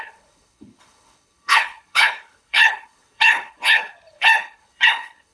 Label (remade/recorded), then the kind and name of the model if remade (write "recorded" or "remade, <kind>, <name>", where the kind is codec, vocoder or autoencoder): remade, codec, HILCodec